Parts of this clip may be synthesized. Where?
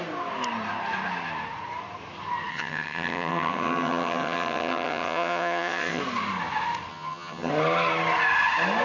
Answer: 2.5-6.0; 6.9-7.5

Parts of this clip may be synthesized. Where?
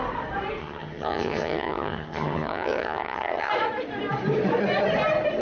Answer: 0.6-3.5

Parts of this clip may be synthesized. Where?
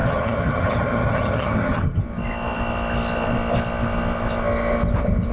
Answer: 0.0-2.0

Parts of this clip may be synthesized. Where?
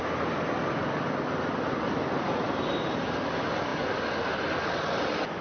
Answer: none